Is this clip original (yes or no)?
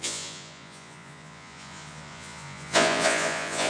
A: no